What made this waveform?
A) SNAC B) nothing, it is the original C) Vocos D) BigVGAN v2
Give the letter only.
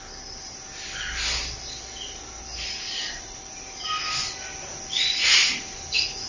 B